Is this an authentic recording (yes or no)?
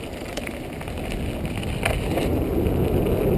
yes